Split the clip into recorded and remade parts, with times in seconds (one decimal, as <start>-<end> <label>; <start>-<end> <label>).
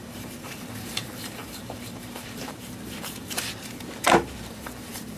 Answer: 0.0-5.2 remade